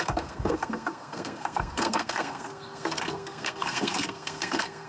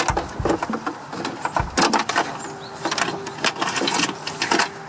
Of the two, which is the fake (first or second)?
first